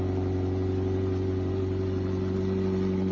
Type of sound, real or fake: real